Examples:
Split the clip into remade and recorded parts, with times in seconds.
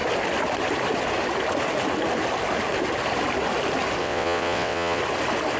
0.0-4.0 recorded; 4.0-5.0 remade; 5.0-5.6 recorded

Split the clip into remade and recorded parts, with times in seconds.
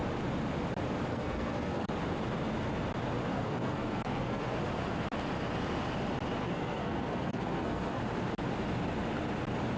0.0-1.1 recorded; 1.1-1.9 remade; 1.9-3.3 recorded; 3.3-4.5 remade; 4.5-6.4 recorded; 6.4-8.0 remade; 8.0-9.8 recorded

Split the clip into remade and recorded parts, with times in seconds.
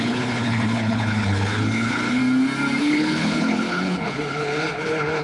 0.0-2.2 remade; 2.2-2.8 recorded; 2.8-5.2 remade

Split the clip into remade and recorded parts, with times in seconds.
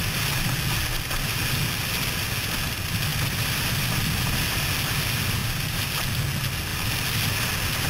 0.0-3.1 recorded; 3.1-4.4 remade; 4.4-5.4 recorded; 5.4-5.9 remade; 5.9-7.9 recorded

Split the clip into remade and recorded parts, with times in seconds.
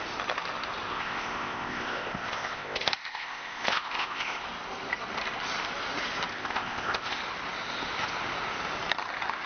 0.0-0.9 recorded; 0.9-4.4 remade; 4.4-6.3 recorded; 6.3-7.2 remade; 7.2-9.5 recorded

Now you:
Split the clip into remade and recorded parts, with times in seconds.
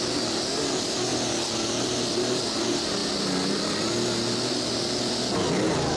0.0-6.0 recorded